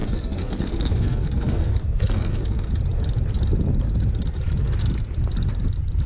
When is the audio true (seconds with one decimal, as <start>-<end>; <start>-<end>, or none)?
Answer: 2.7-6.1